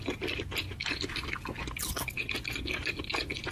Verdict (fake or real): real